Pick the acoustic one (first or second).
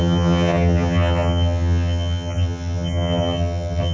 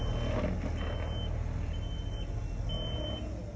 second